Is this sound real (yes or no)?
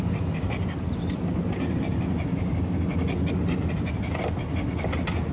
yes